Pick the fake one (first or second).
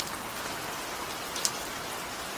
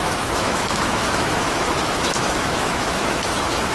second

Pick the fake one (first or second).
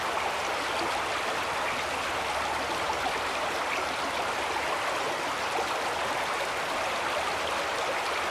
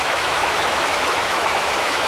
second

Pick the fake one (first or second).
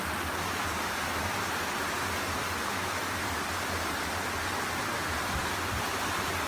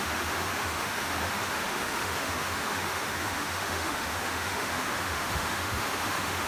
second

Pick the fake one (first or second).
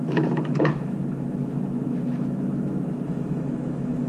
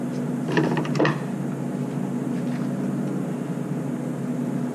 first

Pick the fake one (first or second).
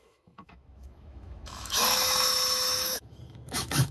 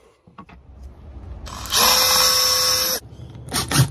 first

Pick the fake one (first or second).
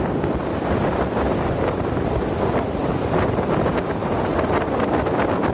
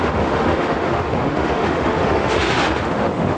second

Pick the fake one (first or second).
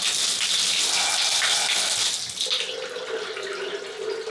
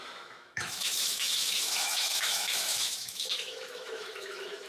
second